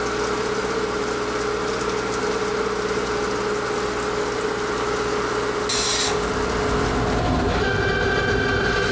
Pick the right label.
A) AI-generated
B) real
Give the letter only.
B